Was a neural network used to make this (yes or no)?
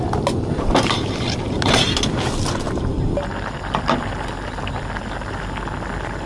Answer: no